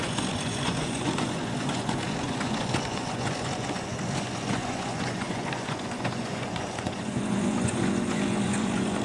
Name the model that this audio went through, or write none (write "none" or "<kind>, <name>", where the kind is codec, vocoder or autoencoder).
vocoder, Vocos